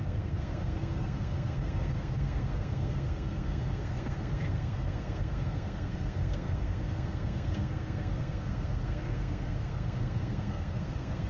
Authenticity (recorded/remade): remade